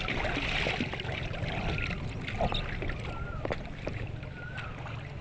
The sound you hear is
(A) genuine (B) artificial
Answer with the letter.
A